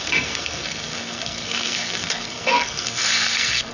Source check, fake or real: fake